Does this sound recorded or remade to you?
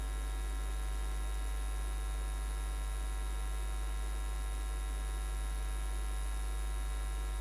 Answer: recorded